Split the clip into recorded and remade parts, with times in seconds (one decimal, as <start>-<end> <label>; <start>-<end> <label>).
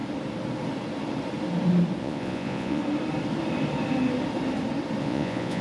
0.0-2.0 recorded; 2.0-2.8 remade; 2.8-5.0 recorded; 5.0-5.6 remade